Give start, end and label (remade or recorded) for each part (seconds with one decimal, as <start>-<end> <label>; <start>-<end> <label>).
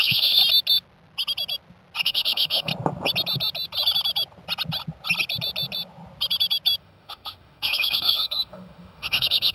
0.0-0.4 remade; 0.4-2.0 recorded; 2.0-2.7 remade; 2.7-6.8 recorded; 6.8-9.5 remade